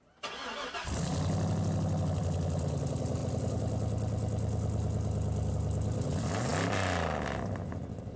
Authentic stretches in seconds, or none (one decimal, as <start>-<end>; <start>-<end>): 0.0-8.2